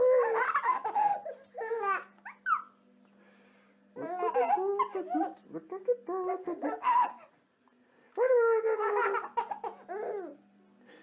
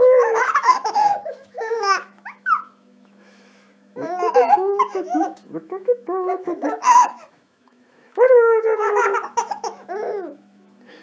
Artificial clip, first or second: second